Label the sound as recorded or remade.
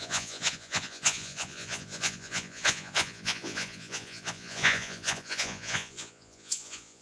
remade